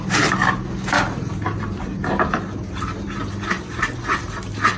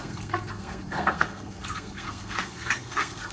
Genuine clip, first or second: first